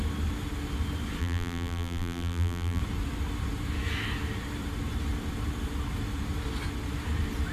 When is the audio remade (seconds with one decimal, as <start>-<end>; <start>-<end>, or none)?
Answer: 1.2-2.8